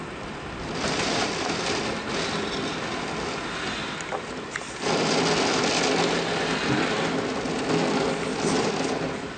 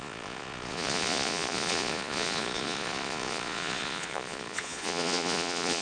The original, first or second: first